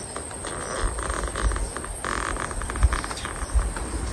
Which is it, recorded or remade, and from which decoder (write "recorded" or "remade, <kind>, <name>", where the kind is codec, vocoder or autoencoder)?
recorded